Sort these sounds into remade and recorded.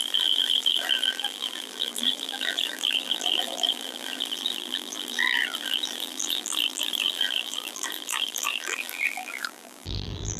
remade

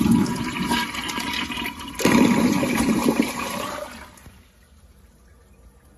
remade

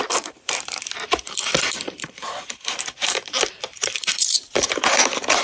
remade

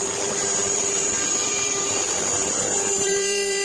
remade